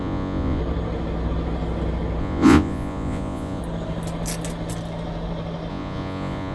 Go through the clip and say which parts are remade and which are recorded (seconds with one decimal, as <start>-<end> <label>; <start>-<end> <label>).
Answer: 0.0-0.6 remade; 0.6-2.2 recorded; 2.2-3.6 remade; 3.6-5.7 recorded; 5.7-6.5 remade

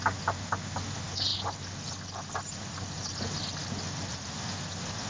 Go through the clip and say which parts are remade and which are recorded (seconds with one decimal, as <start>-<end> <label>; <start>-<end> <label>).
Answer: 0.0-5.1 recorded

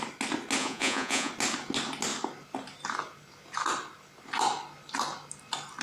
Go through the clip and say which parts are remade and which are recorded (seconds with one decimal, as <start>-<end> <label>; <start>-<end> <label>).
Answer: 0.0-0.6 recorded; 0.6-1.3 remade; 1.3-5.8 recorded

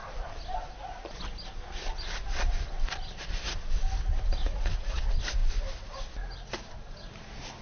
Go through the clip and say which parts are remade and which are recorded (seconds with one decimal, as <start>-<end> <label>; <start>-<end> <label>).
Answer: 0.0-4.4 recorded; 4.4-5.0 remade; 5.0-7.6 recorded

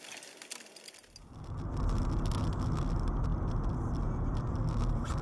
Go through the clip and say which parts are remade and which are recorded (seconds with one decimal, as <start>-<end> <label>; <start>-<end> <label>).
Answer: 0.0-5.2 recorded

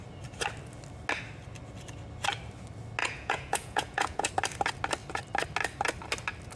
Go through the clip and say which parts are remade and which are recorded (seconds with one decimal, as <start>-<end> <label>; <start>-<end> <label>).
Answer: 0.0-3.0 recorded; 3.0-4.3 remade; 4.3-6.6 recorded

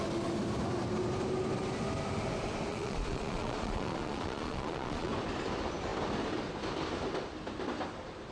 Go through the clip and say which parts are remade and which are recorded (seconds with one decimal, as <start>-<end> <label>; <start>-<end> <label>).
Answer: 0.0-2.7 recorded; 2.7-5.1 remade; 5.1-8.3 recorded